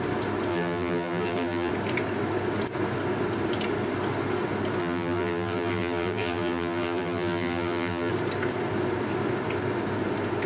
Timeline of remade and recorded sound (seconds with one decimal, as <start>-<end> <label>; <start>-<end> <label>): 0.0-0.5 recorded; 0.5-1.7 remade; 1.7-4.8 recorded; 4.8-8.1 remade; 8.1-10.5 recorded